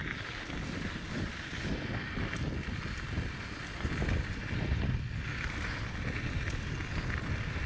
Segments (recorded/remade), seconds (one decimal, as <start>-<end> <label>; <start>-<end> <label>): 0.0-7.7 recorded